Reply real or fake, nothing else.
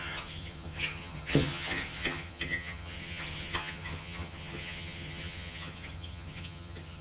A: fake